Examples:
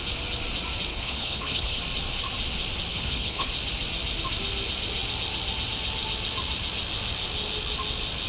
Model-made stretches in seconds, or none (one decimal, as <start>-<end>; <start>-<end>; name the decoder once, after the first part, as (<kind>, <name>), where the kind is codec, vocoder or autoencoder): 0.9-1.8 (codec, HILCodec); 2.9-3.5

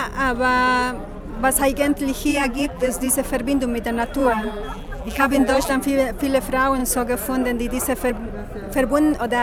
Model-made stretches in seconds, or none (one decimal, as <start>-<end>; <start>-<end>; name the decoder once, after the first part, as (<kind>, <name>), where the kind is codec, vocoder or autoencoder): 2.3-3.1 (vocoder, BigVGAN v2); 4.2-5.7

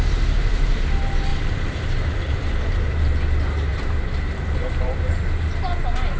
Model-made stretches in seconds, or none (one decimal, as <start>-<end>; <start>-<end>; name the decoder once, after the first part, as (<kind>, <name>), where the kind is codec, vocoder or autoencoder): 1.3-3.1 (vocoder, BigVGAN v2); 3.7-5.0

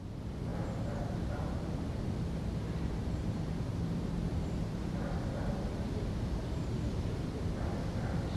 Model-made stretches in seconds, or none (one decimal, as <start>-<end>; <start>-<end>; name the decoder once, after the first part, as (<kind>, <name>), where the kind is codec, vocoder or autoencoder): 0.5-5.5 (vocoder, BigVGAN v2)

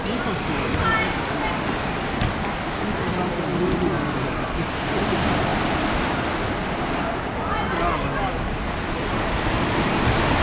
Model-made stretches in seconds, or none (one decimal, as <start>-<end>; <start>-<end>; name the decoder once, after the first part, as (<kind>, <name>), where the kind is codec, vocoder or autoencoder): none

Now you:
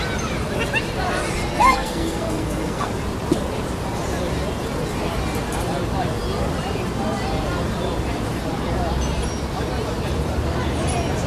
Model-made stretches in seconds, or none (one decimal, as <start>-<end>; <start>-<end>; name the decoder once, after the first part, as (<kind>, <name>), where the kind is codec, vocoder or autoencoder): 1.5-2.9 (codec, SNAC)